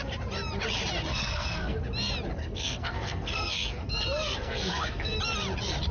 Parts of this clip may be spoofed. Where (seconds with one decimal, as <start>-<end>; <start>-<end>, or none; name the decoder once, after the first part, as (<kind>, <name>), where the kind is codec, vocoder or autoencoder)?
1.1-1.8 (codec, SNAC); 2.4-5.2